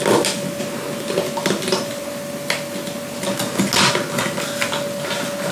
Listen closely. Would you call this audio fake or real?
real